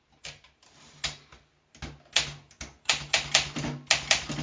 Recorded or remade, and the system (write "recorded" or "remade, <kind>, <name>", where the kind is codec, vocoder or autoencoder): recorded